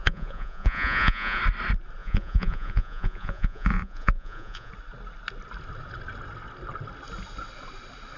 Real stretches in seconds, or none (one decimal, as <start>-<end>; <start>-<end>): 1.4-2.0; 4.7-8.2